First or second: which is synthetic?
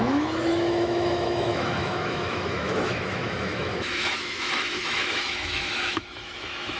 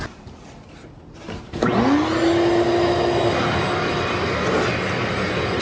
first